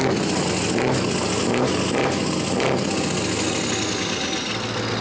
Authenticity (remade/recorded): recorded